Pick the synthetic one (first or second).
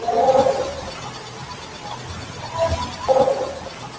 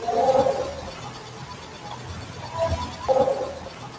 first